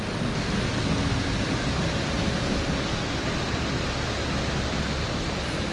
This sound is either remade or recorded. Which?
recorded